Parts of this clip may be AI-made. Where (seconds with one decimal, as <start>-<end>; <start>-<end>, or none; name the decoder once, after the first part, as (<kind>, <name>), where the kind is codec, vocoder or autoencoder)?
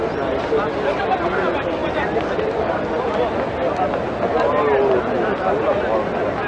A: none